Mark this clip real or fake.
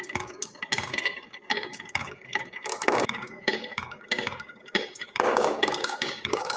fake